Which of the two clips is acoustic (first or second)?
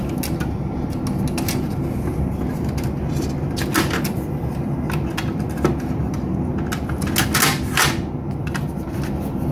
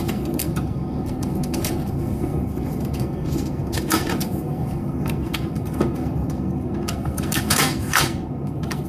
first